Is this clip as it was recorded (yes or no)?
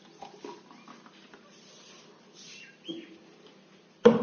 yes